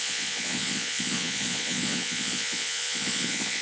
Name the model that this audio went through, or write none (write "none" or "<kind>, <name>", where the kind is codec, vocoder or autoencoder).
vocoder, Vocos